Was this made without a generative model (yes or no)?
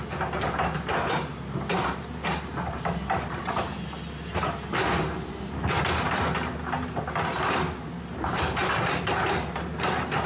yes